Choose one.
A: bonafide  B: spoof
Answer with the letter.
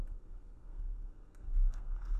B